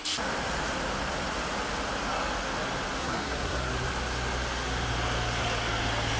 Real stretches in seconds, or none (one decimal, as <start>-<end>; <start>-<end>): 0.0-3.0; 3.7-6.2